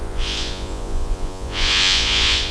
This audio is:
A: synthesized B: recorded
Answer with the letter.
A